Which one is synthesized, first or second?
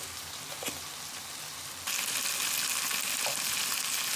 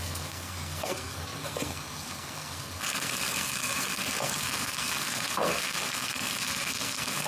second